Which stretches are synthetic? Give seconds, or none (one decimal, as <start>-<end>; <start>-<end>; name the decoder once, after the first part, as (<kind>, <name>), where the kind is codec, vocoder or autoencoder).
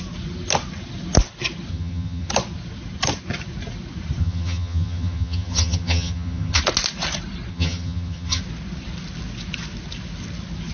1.7-2.3 (vocoder, HiFi-GAN); 4.2-6.6; 7.5-8.4